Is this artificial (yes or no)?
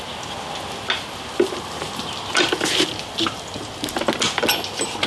no